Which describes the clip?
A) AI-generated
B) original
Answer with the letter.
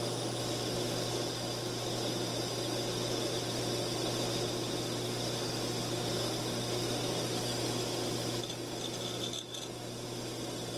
B